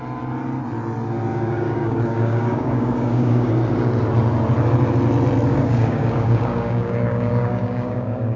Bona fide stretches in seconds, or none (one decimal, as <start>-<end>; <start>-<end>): 0.0-1.3; 3.5-5.5